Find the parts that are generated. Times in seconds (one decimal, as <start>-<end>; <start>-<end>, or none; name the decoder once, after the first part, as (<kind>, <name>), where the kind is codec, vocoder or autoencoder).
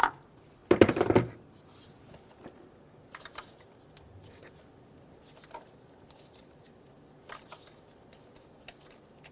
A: none